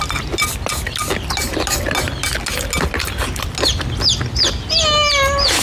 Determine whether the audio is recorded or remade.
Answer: recorded